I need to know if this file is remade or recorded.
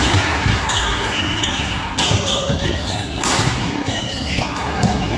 remade